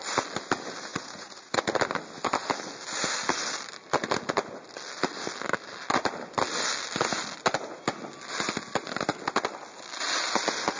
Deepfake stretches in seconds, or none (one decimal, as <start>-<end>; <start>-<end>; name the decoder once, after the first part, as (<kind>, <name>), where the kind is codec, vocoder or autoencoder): 0.9-1.6 (vocoder, Vocos)